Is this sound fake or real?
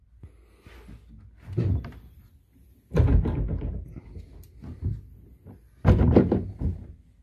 real